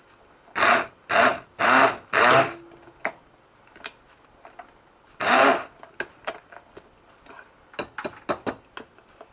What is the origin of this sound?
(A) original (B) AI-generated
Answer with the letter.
A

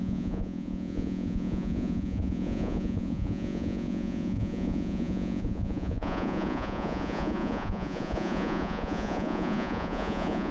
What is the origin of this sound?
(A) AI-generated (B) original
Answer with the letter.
A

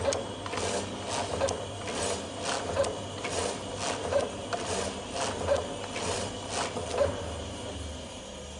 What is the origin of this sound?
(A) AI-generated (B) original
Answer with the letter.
B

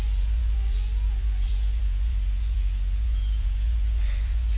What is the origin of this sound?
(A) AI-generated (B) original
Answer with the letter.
A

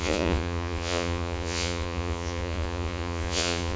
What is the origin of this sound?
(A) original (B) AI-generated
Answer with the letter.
B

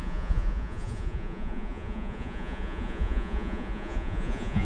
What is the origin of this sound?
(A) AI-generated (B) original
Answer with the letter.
A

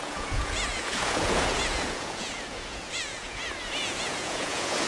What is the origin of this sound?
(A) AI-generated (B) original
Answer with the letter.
A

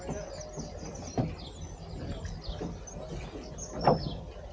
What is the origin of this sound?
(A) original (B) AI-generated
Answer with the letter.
A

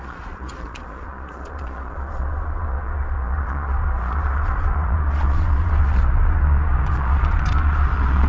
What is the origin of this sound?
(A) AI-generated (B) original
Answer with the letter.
A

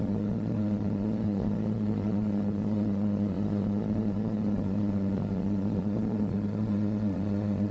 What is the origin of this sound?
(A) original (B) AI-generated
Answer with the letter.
B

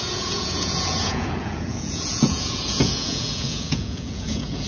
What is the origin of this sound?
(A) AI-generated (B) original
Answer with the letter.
A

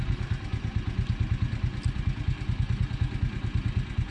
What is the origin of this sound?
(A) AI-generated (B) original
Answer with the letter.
B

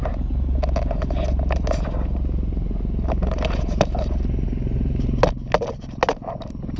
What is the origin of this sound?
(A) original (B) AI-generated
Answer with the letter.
A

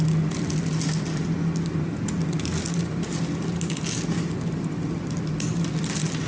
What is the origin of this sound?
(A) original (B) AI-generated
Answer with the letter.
A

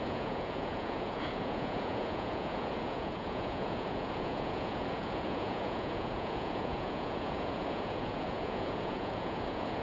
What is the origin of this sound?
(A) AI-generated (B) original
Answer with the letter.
A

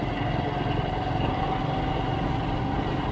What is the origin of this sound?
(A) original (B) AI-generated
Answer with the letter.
A